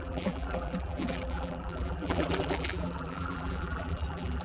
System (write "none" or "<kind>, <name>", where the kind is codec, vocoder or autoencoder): vocoder, BigVGAN v2